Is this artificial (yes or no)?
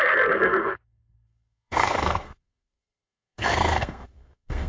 yes